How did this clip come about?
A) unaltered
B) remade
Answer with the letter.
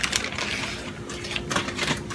A